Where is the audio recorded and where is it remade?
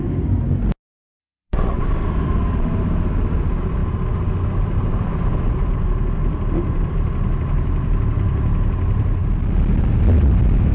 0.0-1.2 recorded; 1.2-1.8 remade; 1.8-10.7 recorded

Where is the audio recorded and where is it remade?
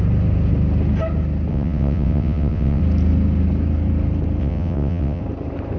0.0-1.5 recorded; 1.5-2.8 remade; 2.8-4.4 recorded; 4.4-5.2 remade; 5.2-5.8 recorded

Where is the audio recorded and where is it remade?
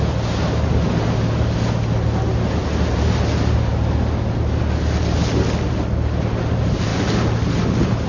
0.0-8.1 recorded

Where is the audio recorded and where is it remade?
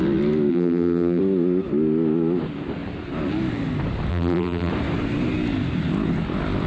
0.0-0.5 recorded; 0.5-1.2 remade; 1.2-4.1 recorded; 4.1-4.7 remade; 4.7-6.7 recorded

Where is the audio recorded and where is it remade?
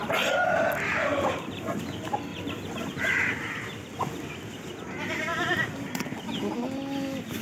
0.0-1.1 recorded; 1.1-1.8 remade; 1.8-2.3 recorded; 2.3-3.3 remade; 3.3-5.3 recorded; 5.3-6.2 remade; 6.2-7.4 recorded